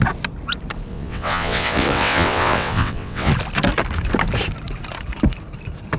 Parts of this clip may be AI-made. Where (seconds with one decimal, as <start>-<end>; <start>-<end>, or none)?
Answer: 0.9-3.3